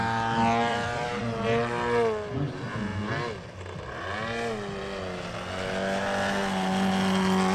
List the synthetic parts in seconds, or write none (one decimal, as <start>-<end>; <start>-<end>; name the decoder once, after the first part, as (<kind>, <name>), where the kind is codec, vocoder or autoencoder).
0.7-1.2 (vocoder, BigVGAN v2)